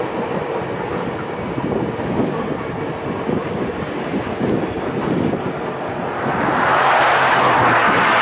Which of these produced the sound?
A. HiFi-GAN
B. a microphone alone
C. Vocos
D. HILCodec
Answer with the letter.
B